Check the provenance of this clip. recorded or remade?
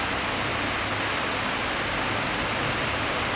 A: recorded